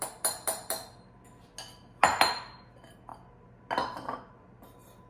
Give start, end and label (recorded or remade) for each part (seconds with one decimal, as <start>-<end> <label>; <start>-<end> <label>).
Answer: 0.0-5.1 recorded